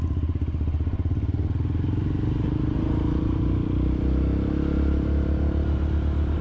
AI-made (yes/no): no